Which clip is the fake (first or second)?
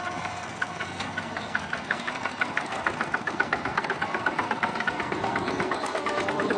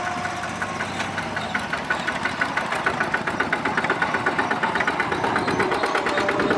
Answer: first